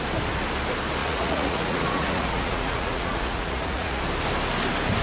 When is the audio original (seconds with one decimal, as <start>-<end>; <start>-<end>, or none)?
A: 0.0-1.0; 4.0-5.0